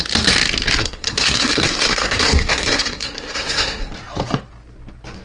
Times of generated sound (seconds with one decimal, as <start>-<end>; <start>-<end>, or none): 0.8-3.9